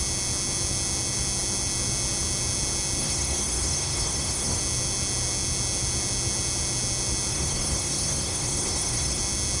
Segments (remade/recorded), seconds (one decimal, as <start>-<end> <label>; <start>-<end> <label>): 0.0-3.0 recorded; 3.0-4.6 remade; 4.6-7.3 recorded; 7.3-9.2 remade; 9.2-9.6 recorded